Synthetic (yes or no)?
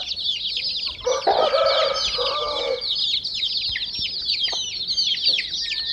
no